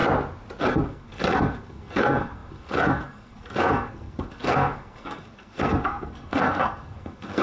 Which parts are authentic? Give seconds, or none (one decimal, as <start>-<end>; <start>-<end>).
0.0-0.6